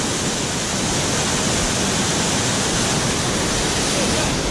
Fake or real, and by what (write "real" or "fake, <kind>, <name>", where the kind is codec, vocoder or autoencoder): real